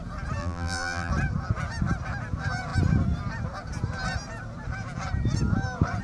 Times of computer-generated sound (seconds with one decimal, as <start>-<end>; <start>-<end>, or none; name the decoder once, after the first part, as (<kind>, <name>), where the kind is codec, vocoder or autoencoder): 0.4-1.1 (vocoder, BigVGAN v2)